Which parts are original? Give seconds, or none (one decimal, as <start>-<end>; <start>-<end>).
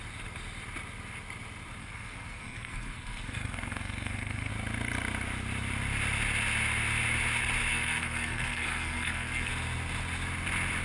0.0-1.8; 4.5-7.7; 9.5-10.8